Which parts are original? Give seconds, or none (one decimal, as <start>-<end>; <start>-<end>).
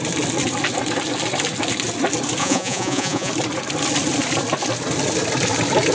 0.0-2.4; 3.3-5.9